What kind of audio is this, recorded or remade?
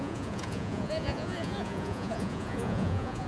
remade